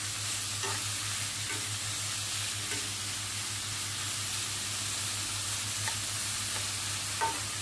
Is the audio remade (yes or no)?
no